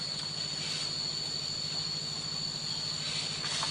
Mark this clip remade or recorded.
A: recorded